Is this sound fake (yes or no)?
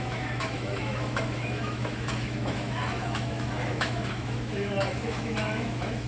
yes